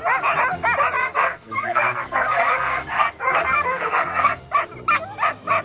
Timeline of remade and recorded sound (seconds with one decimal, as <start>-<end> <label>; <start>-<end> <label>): 0.0-1.0 recorded; 1.0-4.4 remade; 4.4-5.6 recorded